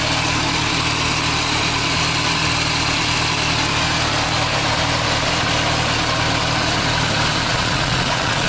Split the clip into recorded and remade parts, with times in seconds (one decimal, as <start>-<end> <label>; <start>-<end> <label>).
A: 0.0-7.5 recorded; 7.5-8.5 remade